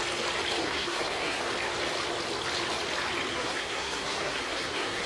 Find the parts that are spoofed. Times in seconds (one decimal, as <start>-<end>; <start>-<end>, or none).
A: 0.6-1.4; 3.3-5.1